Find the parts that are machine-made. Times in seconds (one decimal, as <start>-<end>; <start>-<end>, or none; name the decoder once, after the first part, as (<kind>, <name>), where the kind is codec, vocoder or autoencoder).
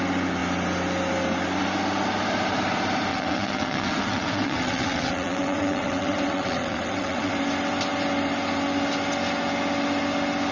3.1-7.3 (vocoder, WaveNeXt)